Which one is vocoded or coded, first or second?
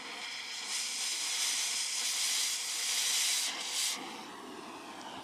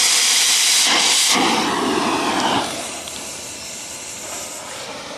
second